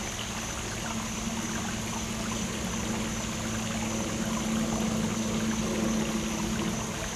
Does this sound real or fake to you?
real